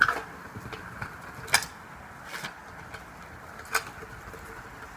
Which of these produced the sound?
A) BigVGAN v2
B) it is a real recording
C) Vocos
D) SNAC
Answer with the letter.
B